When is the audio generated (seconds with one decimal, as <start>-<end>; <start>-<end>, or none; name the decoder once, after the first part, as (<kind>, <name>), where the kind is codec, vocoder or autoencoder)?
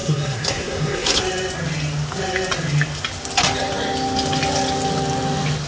0.0-1.2 (codec, SNAC)